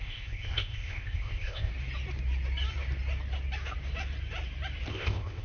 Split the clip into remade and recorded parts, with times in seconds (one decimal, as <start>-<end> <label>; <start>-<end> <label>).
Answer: 0.0-1.7 remade; 1.7-4.9 recorded; 4.9-5.4 remade